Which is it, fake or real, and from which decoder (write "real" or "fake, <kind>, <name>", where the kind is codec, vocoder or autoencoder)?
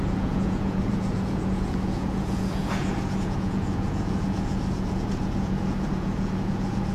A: fake, vocoder, Vocos